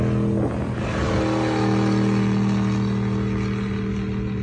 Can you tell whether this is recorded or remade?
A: recorded